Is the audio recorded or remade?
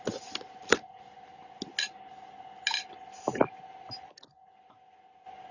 recorded